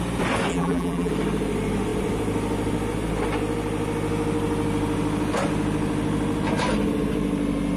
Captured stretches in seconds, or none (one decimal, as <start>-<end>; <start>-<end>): 0.0-0.5; 1.1-7.8